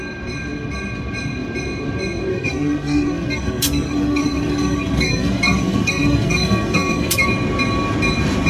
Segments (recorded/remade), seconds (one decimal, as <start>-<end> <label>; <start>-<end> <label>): 0.0-2.3 recorded; 2.3-7.3 remade; 7.3-8.5 recorded